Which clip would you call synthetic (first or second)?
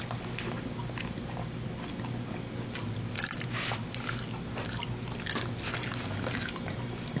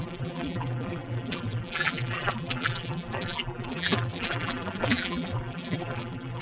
second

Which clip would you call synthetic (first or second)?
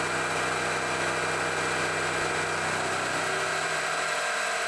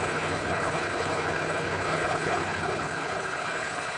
second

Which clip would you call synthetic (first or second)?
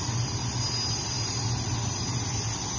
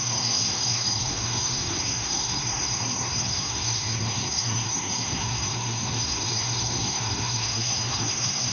second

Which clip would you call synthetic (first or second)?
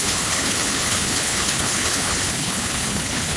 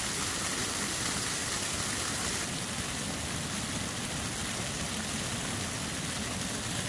first